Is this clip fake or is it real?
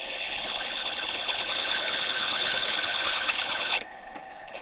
fake